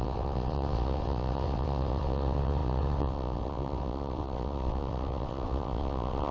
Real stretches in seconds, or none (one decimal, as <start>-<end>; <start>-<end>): none